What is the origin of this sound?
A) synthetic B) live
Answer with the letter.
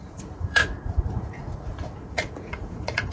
A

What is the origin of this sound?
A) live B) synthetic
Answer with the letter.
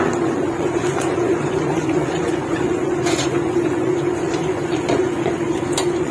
B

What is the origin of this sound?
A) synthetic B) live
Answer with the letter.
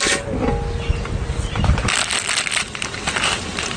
B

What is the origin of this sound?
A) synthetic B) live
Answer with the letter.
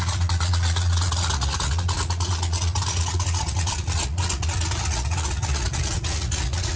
A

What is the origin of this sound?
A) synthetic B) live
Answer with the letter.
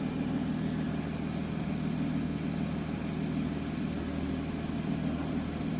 B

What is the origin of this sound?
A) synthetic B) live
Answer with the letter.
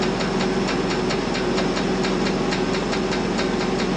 B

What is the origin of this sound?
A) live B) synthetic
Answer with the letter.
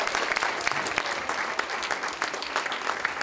A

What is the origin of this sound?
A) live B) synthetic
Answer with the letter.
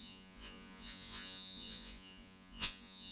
B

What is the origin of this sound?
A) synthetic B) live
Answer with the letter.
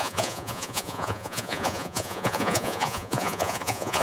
A